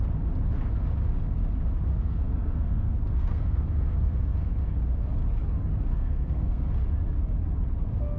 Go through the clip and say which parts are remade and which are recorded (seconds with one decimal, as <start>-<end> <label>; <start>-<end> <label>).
0.0-1.9 recorded; 1.9-4.8 remade; 4.8-5.9 recorded; 5.9-6.7 remade; 6.7-8.2 recorded